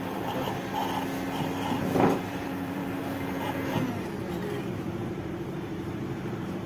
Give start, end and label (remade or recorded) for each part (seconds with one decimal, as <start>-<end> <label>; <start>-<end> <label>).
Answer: 0.0-0.8 remade; 0.8-2.0 recorded; 2.0-2.8 remade; 2.8-4.7 recorded; 4.7-6.7 remade